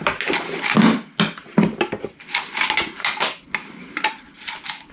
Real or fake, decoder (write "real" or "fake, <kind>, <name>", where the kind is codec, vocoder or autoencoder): real